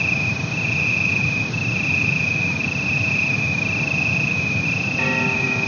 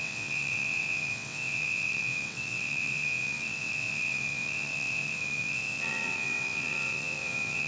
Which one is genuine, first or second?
first